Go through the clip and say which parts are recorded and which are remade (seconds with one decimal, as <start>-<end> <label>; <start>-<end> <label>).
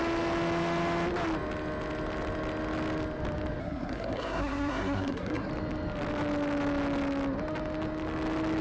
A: 0.0-3.6 recorded; 3.6-5.5 remade; 5.5-8.6 recorded